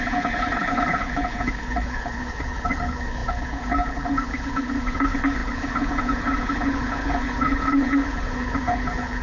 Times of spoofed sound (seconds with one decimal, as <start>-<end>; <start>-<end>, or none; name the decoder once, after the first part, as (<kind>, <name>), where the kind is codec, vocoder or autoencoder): 0.0-9.2 (codec, HILCodec)